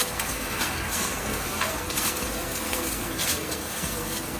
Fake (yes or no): yes